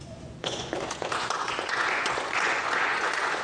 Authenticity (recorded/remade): remade